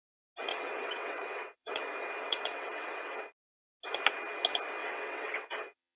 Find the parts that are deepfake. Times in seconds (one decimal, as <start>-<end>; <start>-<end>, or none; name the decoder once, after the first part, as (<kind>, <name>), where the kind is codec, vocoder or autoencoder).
0.5-1.8 (vocoder, WaveNeXt); 2.2-3.3; 4.8-6.0

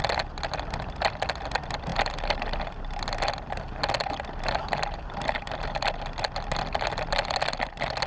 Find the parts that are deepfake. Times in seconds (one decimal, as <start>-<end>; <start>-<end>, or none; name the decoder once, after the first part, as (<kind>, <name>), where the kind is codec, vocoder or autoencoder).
none